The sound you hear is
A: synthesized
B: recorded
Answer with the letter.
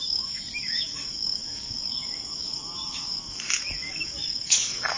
A